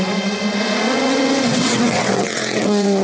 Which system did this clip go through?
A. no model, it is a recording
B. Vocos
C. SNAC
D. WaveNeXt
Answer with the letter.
D